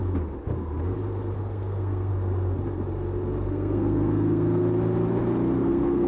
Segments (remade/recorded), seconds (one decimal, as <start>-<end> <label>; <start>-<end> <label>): 0.0-1.4 recorded; 1.4-2.1 remade; 2.1-3.5 recorded; 3.5-4.6 remade; 4.6-5.6 recorded; 5.6-6.1 remade